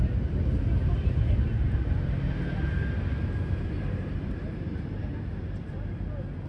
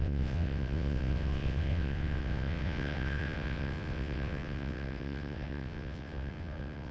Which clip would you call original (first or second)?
first